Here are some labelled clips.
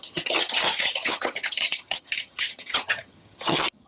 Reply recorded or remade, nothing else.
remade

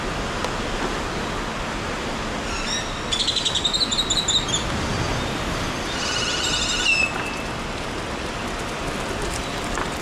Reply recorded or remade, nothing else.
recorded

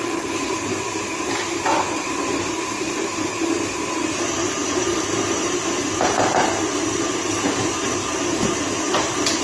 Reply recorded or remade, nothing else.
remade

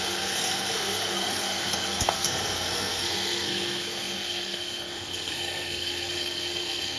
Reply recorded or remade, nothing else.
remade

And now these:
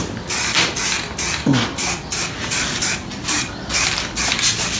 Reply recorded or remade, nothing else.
recorded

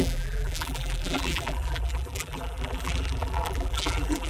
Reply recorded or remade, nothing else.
remade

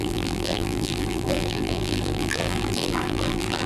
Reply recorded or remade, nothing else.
remade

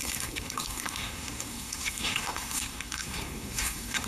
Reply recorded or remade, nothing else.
remade